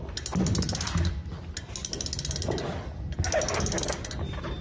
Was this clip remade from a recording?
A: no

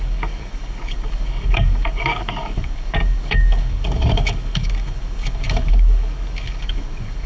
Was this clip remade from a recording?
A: yes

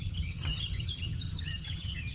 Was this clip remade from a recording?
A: yes